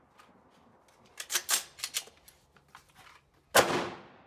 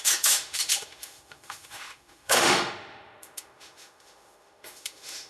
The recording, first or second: first